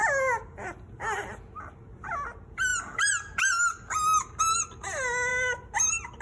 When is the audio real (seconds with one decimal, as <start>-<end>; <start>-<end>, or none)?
0.0-6.2